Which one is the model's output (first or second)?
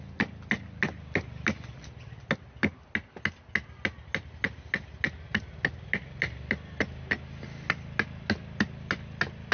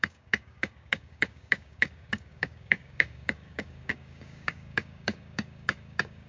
second